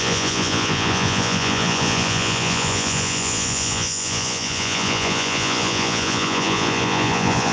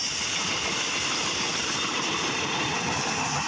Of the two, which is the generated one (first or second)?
first